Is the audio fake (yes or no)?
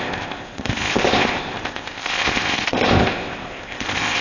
yes